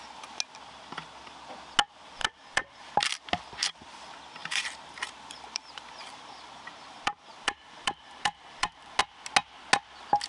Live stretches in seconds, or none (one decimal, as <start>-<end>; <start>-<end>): 0.0-2.2; 2.9-4.4; 9.0-10.3